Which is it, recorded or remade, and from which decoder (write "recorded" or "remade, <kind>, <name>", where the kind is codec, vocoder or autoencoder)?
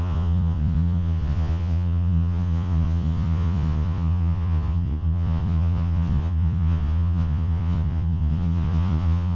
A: remade, vocoder, Vocos